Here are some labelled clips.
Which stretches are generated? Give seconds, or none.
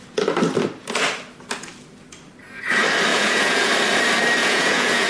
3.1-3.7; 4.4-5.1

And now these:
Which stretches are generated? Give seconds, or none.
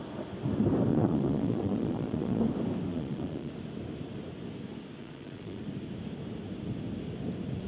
0.9-2.4; 2.9-3.5; 5.0-5.6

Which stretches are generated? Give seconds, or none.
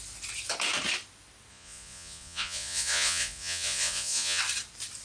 1.5-4.4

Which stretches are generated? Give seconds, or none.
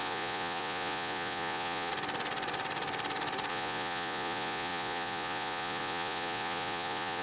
0.0-1.9; 3.5-7.2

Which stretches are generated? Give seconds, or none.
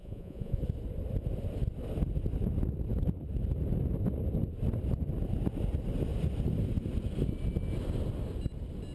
0.0-0.6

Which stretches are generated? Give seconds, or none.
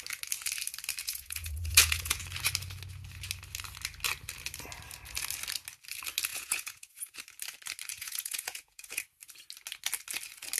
1.0-2.2; 6.3-7.2; 7.9-9.0